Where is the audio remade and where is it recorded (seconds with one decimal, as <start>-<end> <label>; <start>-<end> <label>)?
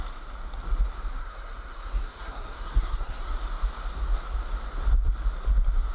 0.0-1.2 recorded; 1.2-3.3 remade; 3.3-5.9 recorded